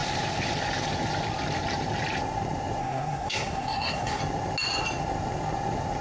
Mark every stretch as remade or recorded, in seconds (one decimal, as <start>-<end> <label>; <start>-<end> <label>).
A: 0.0-2.8 recorded; 2.8-4.2 remade; 4.2-6.0 recorded